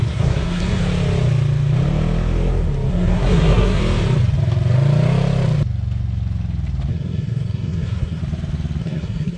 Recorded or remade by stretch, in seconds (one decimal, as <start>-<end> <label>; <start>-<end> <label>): 0.0-0.8 remade; 0.8-2.9 recorded; 2.9-3.8 remade; 3.8-6.9 recorded; 6.9-8.2 remade; 8.2-8.8 recorded; 8.8-9.4 remade